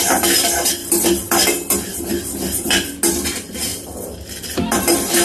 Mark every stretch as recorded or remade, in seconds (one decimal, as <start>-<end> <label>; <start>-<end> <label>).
0.0-3.7 recorded; 3.7-4.6 remade; 4.6-5.2 recorded